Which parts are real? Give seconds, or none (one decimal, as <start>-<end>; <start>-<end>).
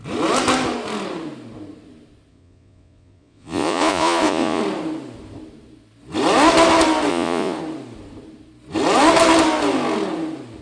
0.0-2.3; 4.6-7.1; 7.6-10.6